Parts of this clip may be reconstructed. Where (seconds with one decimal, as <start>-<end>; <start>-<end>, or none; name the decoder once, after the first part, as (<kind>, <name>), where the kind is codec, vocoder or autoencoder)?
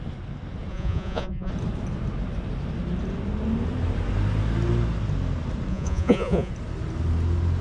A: 0.7-1.5 (vocoder, Vocos); 5.7-6.5